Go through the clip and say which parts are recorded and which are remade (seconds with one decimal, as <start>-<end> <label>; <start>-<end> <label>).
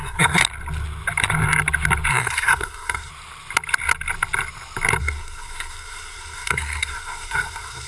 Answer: 0.0-0.4 remade; 0.4-2.1 recorded; 2.1-3.1 remade; 3.1-5.0 recorded; 5.0-7.9 remade